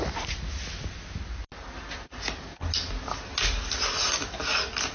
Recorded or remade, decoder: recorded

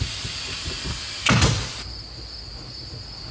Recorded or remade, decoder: recorded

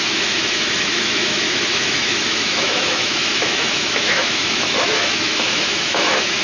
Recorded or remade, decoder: remade, autoencoder, DAC-VAE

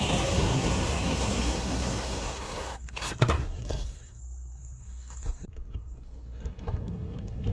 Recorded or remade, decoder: remade, codec, SNAC